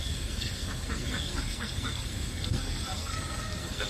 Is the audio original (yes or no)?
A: no